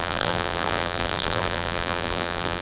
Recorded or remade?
remade